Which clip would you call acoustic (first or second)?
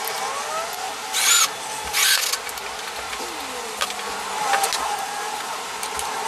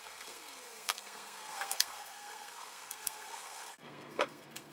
first